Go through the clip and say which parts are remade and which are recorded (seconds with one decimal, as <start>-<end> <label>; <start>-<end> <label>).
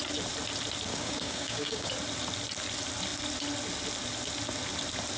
0.0-0.9 recorded; 0.9-1.9 remade; 1.9-5.2 recorded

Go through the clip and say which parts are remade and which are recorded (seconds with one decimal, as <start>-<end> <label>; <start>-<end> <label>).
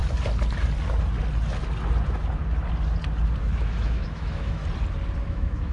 0.0-3.4 recorded; 3.4-4.6 remade; 4.6-5.2 recorded; 5.2-5.7 remade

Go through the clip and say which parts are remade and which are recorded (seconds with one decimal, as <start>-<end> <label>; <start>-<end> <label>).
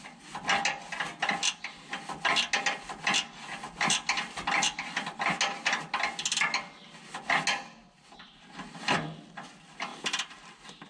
0.0-9.9 recorded; 9.9-10.9 remade